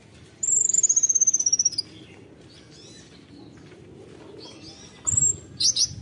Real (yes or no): yes